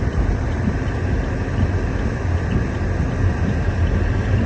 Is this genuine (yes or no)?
yes